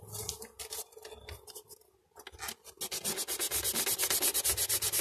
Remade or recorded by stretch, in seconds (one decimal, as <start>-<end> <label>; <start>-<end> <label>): 0.0-5.0 recorded